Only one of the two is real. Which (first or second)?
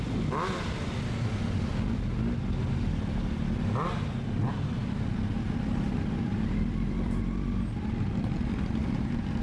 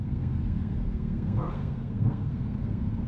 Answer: first